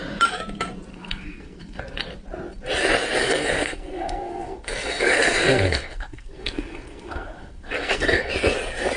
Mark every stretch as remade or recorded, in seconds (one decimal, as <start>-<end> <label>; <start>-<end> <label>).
0.0-0.9 recorded; 0.9-1.8 remade; 1.8-3.2 recorded; 3.2-8.3 remade; 8.3-9.0 recorded